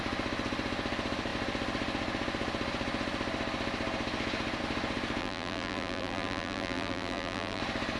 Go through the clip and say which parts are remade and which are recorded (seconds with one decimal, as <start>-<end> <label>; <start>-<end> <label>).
0.0-5.2 recorded; 5.2-7.6 remade; 7.6-8.0 recorded